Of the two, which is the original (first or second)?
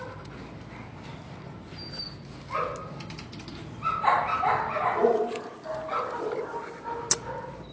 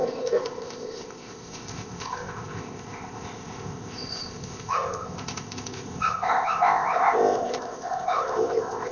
first